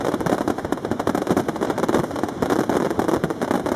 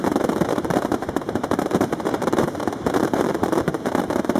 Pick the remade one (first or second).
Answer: second